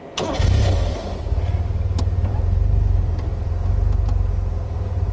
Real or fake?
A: real